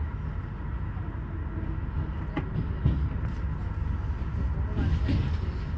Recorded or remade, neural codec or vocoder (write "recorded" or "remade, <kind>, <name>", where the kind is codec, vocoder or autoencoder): recorded